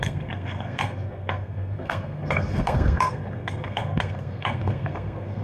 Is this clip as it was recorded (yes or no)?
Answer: no